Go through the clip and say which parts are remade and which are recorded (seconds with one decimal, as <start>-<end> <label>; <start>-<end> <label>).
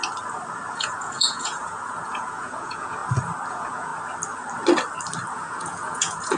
0.0-0.7 recorded; 0.7-3.0 remade; 3.0-3.5 recorded; 3.5-3.9 remade; 3.9-5.3 recorded; 5.3-6.4 remade